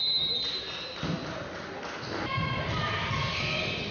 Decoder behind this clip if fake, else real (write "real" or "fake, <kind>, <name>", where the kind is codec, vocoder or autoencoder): real